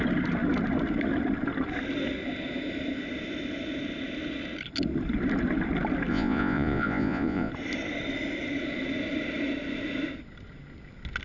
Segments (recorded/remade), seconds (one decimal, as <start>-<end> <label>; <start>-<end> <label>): 0.0-6.1 recorded; 6.1-7.5 remade; 7.5-11.2 recorded